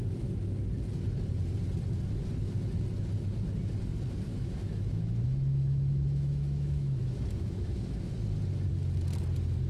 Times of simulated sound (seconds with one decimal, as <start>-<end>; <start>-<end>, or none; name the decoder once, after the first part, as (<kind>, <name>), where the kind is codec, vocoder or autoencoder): 4.3-8.1 (autoencoder, DAC-VAE)